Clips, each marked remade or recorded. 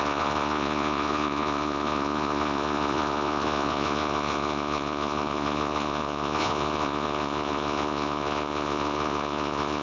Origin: remade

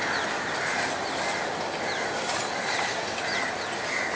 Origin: recorded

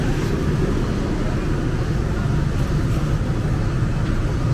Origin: recorded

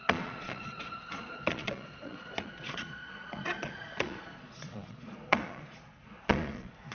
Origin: remade